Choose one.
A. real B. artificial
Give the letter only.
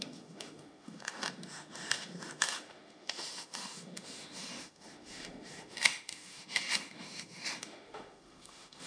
B